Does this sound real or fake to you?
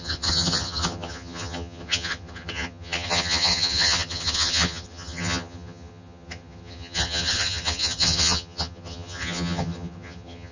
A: fake